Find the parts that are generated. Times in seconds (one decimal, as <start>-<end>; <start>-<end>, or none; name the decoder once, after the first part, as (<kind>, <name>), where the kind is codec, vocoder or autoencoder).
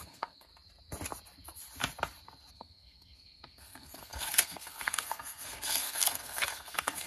0.0-0.5 (codec, SNAC); 2.5-7.1